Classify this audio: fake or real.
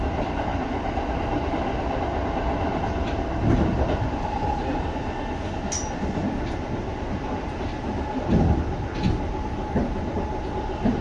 real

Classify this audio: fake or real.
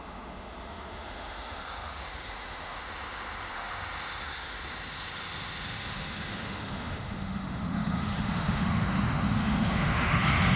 fake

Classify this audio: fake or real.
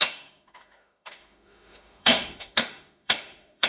fake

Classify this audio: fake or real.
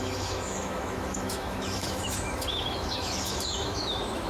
fake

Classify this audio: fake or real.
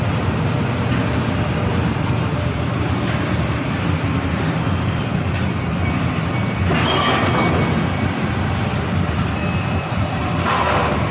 real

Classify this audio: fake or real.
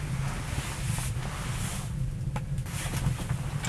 real